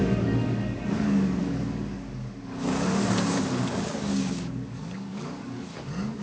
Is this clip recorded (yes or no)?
no